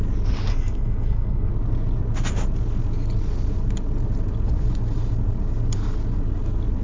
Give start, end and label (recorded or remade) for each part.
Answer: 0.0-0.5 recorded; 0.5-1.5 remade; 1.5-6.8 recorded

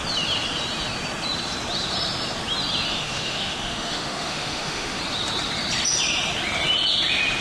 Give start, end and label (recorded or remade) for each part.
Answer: 0.0-2.9 recorded; 2.9-5.0 remade; 5.0-7.4 recorded

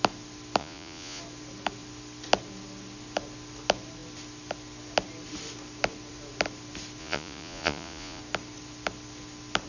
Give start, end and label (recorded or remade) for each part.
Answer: 0.0-0.6 recorded; 0.6-1.2 remade; 1.2-7.0 recorded; 7.0-8.2 remade; 8.2-9.7 recorded

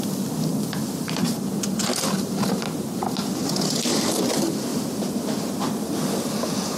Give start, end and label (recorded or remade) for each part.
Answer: 0.0-0.5 recorded; 0.5-1.2 remade; 1.2-4.7 recorded; 4.7-6.3 remade; 6.3-6.8 recorded

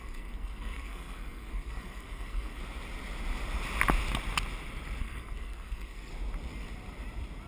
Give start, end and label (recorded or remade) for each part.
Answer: 0.0-2.6 remade; 2.6-5.0 recorded; 5.0-6.1 remade; 6.1-7.5 recorded